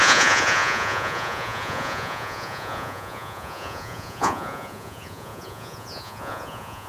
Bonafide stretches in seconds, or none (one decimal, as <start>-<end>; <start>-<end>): none